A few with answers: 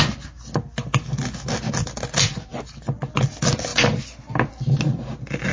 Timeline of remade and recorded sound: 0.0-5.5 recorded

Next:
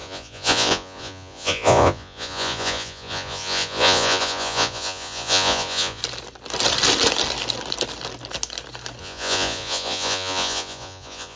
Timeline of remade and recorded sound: 0.0-6.0 remade; 6.0-9.0 recorded; 9.0-11.4 remade

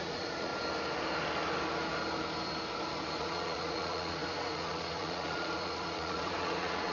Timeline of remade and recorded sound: 0.0-0.5 remade; 0.5-3.2 recorded; 3.2-6.9 remade

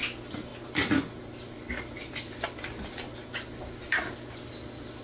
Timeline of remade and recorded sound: 0.0-5.0 recorded

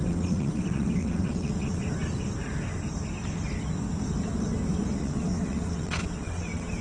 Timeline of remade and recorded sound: 0.0-1.8 remade; 1.8-5.0 recorded; 5.0-6.8 remade

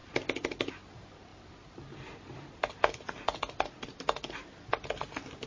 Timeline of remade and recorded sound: 0.0-5.5 recorded